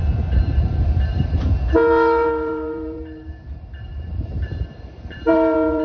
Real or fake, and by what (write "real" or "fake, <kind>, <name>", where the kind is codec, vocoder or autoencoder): fake, vocoder, BigVGAN v2